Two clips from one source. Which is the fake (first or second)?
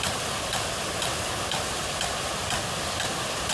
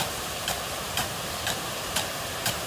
second